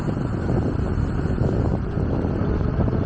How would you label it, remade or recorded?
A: recorded